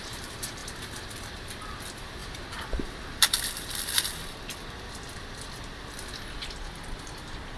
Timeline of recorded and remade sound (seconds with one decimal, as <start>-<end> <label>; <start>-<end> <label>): 0.0-7.6 remade